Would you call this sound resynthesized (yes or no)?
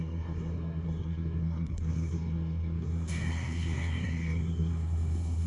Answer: yes